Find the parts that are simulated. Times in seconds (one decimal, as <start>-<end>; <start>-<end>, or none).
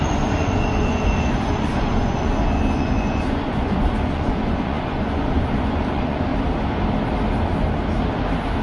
0.0-6.3